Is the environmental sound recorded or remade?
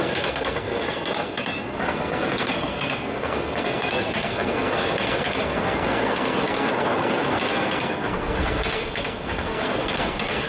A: remade